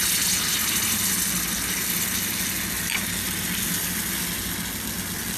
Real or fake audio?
real